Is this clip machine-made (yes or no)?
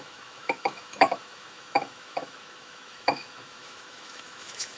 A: yes